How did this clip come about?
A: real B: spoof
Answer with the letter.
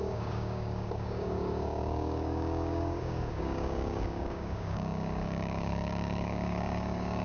B